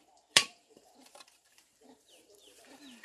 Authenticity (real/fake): fake